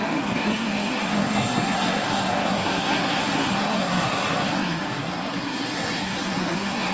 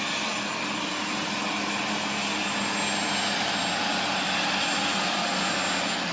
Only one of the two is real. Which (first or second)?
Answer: second